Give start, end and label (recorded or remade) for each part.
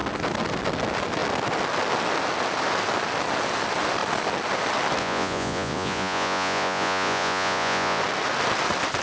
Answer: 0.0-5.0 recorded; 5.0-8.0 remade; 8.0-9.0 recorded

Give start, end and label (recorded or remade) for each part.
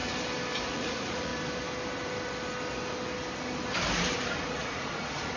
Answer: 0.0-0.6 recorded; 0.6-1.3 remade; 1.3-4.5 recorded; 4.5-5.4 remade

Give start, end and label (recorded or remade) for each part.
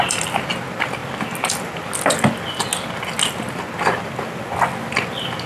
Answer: 0.0-5.5 recorded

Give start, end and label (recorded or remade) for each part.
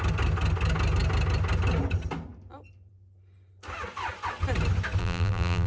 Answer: 0.0-5.0 recorded; 5.0-5.7 remade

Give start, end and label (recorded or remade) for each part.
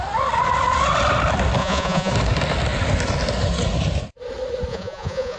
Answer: 0.0-1.6 recorded; 1.6-2.1 remade; 2.1-4.7 recorded; 4.7-5.4 remade